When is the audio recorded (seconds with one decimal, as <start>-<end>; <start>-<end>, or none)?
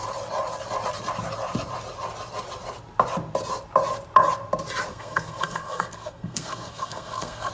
0.0-4.9